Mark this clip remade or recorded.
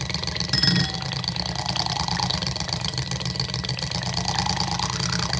recorded